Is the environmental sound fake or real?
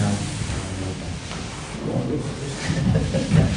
real